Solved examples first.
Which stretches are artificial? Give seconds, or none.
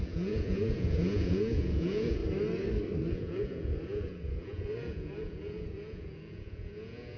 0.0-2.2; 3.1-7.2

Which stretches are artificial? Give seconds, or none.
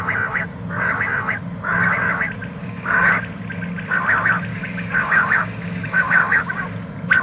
2.6-3.1; 4.5-6.4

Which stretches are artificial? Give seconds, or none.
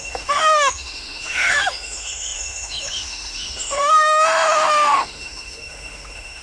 0.0-6.4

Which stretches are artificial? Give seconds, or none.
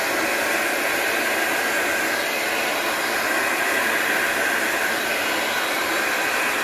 none